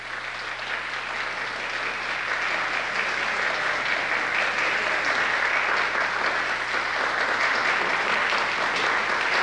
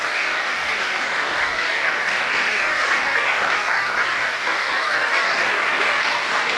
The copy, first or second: second